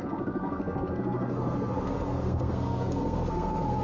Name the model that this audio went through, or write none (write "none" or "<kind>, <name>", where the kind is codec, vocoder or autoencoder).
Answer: codec, SNAC